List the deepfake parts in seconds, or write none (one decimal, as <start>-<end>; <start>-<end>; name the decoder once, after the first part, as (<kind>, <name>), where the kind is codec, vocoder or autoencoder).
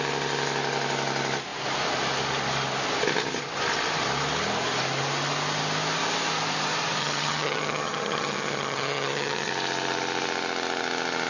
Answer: 7.0-9.5 (vocoder, HiFi-GAN)